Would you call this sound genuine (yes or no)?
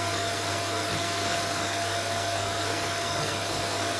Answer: no